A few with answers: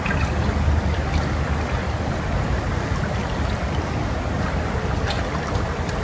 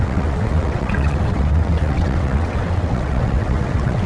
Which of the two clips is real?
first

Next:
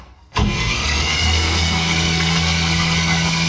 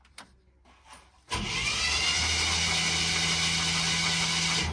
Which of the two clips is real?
second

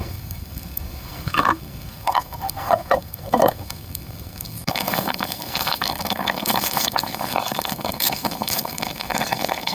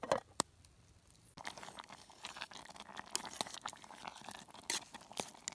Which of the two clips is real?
second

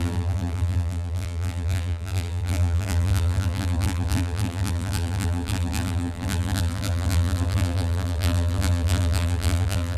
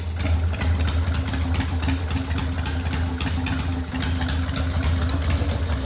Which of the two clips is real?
second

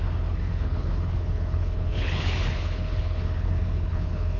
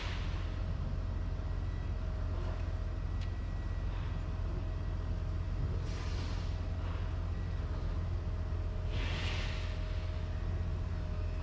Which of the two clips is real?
second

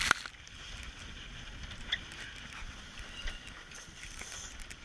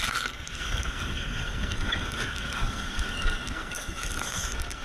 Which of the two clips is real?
first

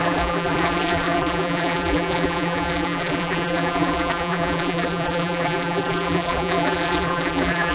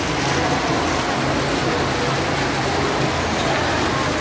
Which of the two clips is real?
second